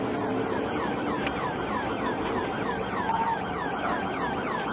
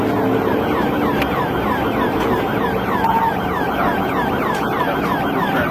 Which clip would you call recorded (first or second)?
second